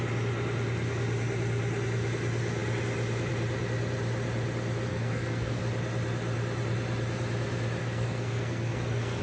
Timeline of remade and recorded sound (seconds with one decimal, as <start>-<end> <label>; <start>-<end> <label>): 0.0-4.9 recorded; 4.9-5.6 remade; 5.6-7.8 recorded; 7.8-9.2 remade

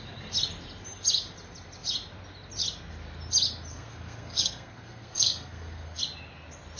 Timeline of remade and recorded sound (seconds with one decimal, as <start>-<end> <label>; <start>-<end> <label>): 0.0-3.7 recorded; 3.7-6.0 remade; 6.0-6.8 recorded